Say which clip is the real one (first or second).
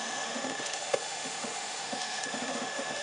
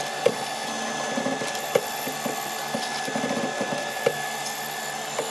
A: second